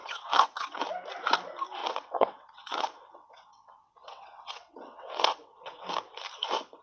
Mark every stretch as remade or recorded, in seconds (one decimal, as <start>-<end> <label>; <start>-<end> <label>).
0.0-0.8 remade; 0.8-1.8 recorded; 1.8-5.9 remade; 5.9-6.8 recorded